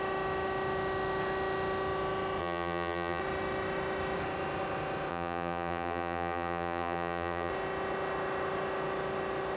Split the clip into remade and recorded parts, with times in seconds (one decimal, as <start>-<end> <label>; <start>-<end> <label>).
0.0-2.4 recorded; 2.4-3.2 remade; 3.2-5.1 recorded; 5.1-7.5 remade; 7.5-9.6 recorded